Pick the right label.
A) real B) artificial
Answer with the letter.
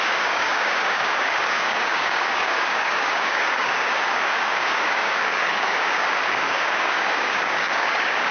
B